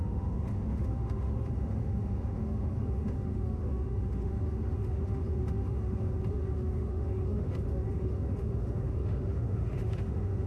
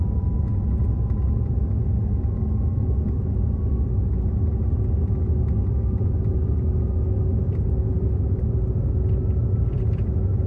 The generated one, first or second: first